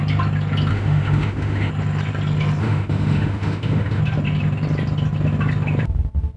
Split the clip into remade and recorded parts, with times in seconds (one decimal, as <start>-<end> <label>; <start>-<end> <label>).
0.0-0.7 recorded; 0.7-1.7 remade; 1.7-2.6 recorded; 2.6-4.0 remade; 4.0-6.4 recorded

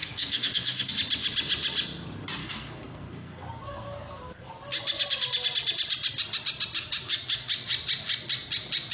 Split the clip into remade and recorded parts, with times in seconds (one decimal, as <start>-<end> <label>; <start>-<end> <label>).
0.0-0.9 remade; 0.9-2.4 recorded; 2.4-4.5 remade; 4.5-8.9 recorded

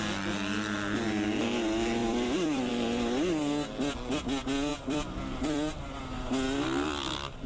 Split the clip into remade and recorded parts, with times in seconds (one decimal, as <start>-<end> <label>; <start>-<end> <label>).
0.0-2.0 recorded; 2.0-2.7 remade; 2.7-4.7 recorded; 4.7-6.0 remade; 6.0-7.5 recorded

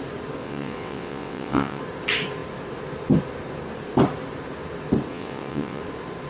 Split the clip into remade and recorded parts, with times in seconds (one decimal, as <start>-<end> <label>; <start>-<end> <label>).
0.0-0.4 recorded; 0.4-1.8 remade; 1.8-5.1 recorded; 5.1-5.8 remade; 5.8-6.3 recorded

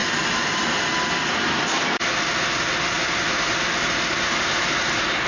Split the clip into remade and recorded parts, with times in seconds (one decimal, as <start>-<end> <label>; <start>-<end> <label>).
0.0-5.3 recorded

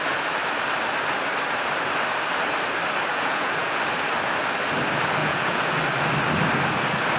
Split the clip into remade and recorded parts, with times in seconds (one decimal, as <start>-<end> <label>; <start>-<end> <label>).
0.0-3.1 recorded; 3.1-3.8 remade; 3.8-5.2 recorded; 5.2-5.8 remade; 5.8-7.2 recorded

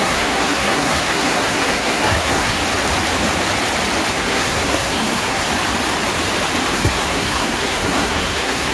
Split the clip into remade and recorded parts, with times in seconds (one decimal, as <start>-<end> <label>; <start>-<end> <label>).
0.0-2.6 remade; 2.6-4.1 recorded; 4.1-5.5 remade; 5.5-6.7 recorded; 6.7-8.7 remade

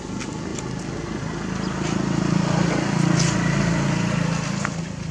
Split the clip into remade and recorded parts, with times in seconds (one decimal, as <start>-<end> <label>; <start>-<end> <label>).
0.0-5.1 recorded